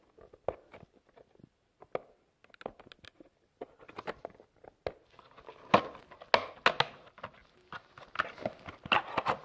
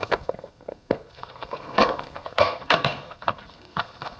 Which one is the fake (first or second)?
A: second